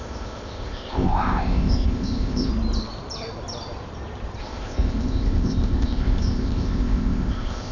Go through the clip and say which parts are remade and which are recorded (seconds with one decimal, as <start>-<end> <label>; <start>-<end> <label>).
0.0-2.5 remade; 2.5-4.4 recorded; 4.4-7.7 remade